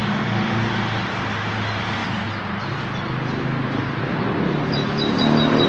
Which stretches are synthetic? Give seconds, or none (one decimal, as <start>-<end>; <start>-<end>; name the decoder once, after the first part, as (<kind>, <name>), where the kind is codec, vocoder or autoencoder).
4.1-5.2 (vocoder, BigVGAN v2)